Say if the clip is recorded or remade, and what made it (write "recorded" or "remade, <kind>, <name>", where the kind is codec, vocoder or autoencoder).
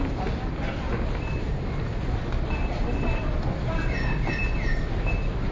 recorded